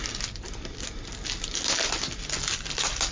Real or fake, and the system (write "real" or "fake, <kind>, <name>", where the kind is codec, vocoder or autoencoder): real